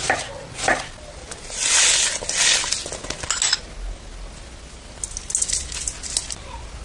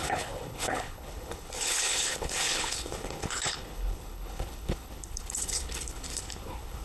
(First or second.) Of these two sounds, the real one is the first